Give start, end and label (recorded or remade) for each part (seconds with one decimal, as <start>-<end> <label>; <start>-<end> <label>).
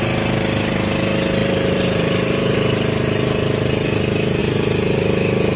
0.0-1.4 recorded; 1.4-2.8 remade; 2.8-5.6 recorded